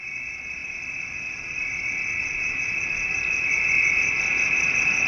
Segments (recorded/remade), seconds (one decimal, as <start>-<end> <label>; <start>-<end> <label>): 0.0-5.1 recorded